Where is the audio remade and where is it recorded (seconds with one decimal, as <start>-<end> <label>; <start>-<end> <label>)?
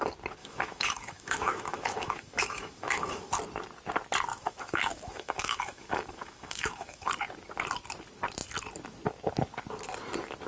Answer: 0.0-0.4 recorded; 0.4-3.4 remade; 3.4-4.3 recorded; 4.3-7.1 remade; 7.1-10.5 recorded